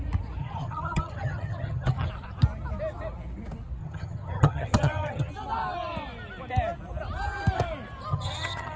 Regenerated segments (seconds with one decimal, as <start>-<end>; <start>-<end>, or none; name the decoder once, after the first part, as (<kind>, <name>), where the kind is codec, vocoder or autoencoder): 0.4-2.1 (vocoder, HiFi-GAN); 3.8-5.3; 8.1-8.8